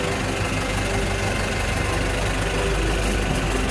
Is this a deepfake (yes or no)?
no